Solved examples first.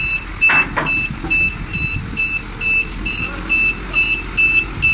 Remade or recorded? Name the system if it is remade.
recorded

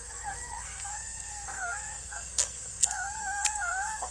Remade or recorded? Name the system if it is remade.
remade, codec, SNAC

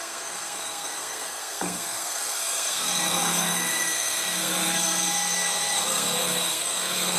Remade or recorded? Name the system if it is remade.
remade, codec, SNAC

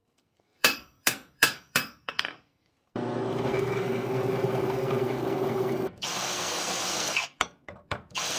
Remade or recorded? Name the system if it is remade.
remade, codec, SNAC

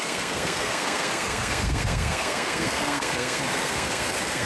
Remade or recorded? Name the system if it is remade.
remade, codec, SNAC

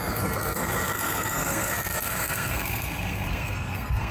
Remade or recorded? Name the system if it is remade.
remade, codec, SNAC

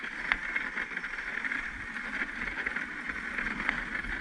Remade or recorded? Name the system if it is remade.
recorded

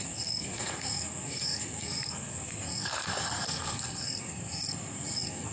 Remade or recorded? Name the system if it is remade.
remade, codec, SNAC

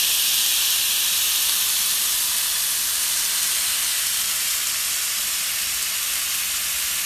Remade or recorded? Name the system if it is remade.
recorded